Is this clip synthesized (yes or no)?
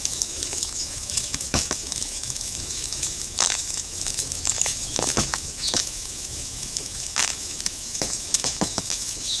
yes